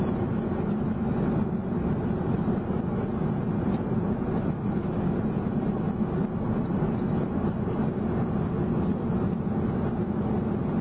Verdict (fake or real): real